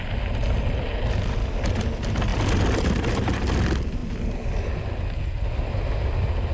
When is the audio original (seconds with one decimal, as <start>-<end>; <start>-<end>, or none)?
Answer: 0.0-6.5